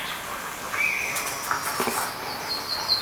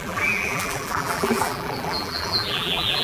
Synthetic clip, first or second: second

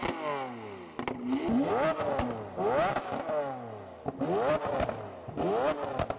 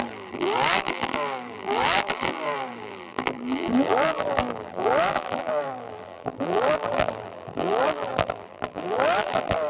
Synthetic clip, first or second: second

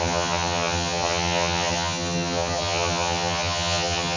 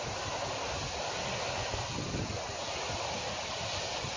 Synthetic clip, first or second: first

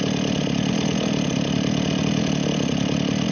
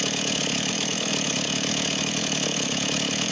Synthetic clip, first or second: second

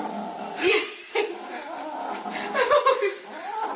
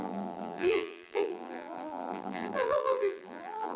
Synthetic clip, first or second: second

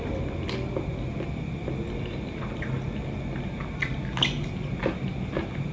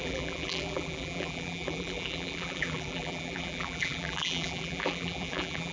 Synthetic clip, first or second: second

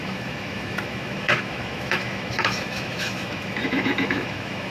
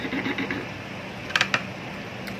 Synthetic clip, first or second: first